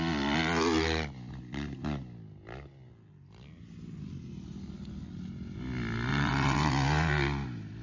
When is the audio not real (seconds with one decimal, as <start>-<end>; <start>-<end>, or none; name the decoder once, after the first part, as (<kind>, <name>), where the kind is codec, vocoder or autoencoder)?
6.1-6.7 (vocoder, WaveNeXt)